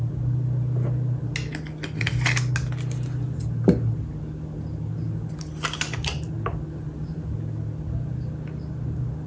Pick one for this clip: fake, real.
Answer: real